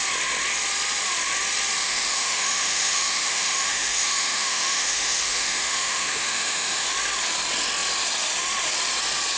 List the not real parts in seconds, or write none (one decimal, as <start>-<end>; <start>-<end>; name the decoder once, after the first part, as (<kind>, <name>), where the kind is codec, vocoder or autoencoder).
1.8-6.9 (autoencoder, DAC-VAE)